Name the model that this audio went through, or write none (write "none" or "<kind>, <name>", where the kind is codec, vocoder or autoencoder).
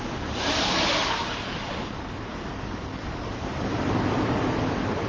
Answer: none